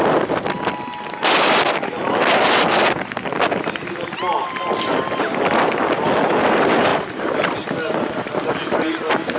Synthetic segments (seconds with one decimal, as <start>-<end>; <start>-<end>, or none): none